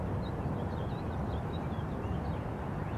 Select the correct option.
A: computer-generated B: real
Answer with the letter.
B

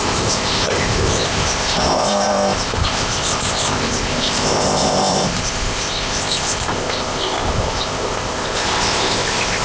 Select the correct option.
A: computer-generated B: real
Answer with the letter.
A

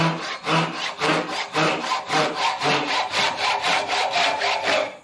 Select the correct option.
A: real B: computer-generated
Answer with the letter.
A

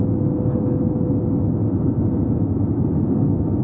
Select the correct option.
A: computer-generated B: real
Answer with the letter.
B